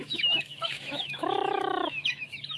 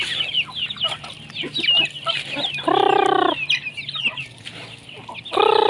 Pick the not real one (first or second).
first